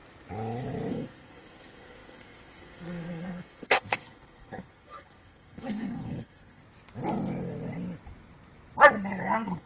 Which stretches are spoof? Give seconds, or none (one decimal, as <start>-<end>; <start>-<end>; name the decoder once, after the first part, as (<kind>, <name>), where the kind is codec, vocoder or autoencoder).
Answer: 0.9-6.6 (codec, SNAC); 9.2-9.7